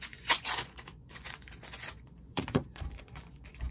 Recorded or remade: remade